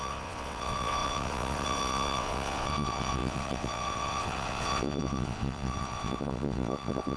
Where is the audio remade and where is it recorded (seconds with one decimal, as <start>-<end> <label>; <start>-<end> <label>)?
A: 0.0-7.2 remade